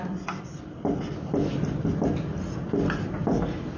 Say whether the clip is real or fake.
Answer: real